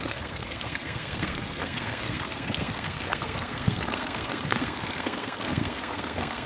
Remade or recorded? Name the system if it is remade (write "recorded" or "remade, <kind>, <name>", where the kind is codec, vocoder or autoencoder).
remade, codec, SNAC